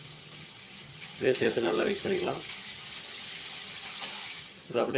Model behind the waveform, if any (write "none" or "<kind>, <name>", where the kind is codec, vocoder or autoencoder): vocoder, HiFi-GAN